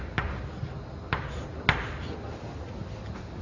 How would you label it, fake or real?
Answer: real